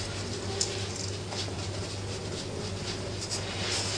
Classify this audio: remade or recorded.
recorded